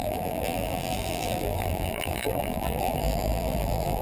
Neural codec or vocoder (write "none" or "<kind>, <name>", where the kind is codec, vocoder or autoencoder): vocoder, BigVGAN v2